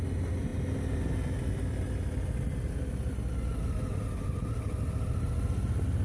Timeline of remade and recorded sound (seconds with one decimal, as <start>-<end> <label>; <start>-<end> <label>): 0.0-6.0 recorded